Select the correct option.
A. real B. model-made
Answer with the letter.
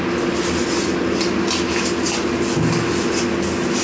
A